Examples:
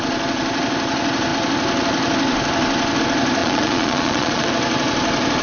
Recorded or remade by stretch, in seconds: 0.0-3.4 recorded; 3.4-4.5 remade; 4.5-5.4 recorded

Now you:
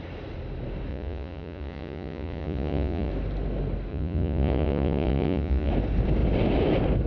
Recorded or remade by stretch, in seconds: 0.0-0.9 recorded; 0.9-3.1 remade; 3.1-3.9 recorded; 3.9-5.7 remade; 5.7-7.1 recorded